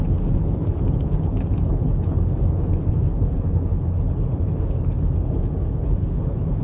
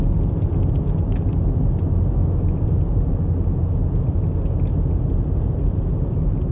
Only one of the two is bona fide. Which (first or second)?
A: second